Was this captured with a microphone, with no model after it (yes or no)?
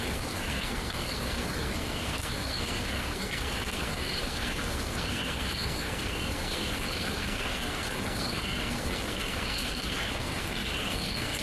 no